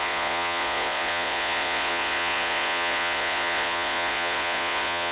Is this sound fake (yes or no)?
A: yes